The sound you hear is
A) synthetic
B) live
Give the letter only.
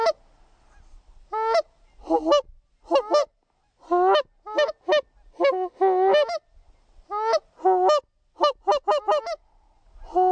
B